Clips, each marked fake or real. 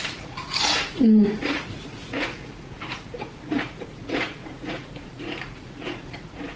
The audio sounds fake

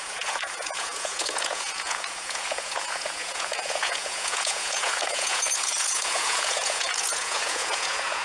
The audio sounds fake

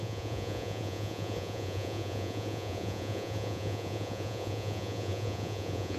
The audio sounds fake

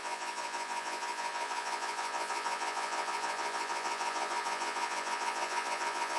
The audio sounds fake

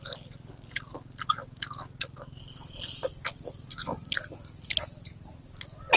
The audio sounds real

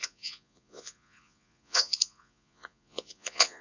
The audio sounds fake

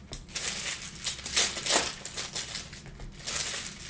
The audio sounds real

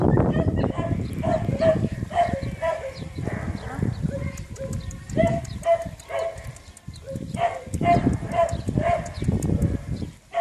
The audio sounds real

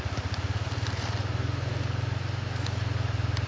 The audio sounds real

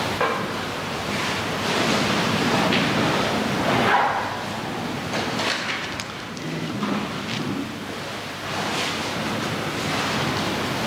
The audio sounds real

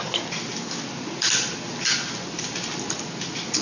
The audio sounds real